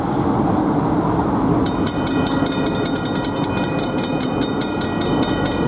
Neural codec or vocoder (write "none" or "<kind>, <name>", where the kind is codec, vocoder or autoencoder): none